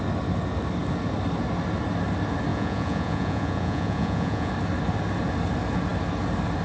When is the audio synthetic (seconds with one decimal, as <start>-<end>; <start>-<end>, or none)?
2.5-4.5